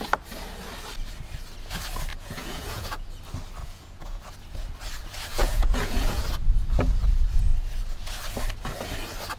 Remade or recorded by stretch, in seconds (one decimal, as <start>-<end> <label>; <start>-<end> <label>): 0.0-2.1 recorded; 2.1-3.1 remade; 3.1-3.6 recorded; 3.6-4.2 remade; 4.2-5.3 recorded; 5.3-6.2 remade; 6.2-9.4 recorded